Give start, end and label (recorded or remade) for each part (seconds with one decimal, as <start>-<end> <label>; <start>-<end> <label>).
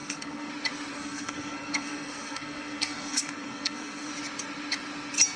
0.0-0.5 remade; 0.5-0.9 recorded; 0.9-4.1 remade; 4.1-5.4 recorded